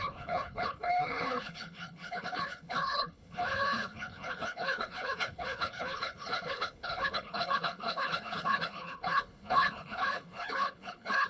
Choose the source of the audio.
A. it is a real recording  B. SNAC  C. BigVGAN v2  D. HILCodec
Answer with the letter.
D